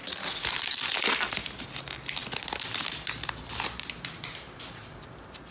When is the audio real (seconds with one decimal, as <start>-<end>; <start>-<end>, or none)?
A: 0.0-5.5

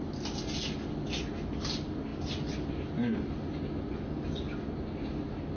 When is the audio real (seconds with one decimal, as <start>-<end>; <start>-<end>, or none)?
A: 0.0-5.6

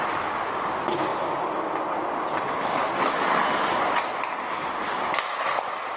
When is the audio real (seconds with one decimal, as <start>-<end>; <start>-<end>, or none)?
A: 0.0-6.0

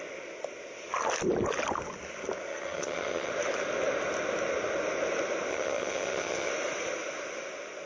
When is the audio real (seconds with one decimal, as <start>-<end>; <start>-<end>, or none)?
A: 0.0-2.5; 3.3-5.5; 6.5-7.9

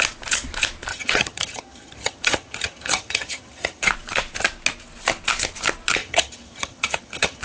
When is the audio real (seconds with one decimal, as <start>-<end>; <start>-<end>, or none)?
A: 0.0-0.9; 3.9-6.0

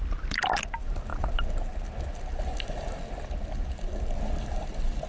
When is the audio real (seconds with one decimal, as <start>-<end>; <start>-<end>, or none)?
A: 0.0-5.1

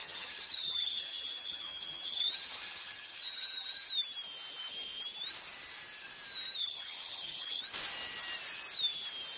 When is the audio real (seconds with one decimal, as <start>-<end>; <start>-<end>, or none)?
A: 3.9-6.6; 7.6-9.4

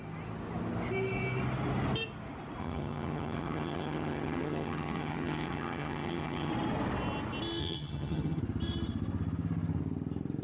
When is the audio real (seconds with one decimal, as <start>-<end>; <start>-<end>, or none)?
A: 0.0-2.6; 6.5-7.6; 8.4-10.4